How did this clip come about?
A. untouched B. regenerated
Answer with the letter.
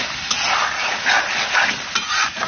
A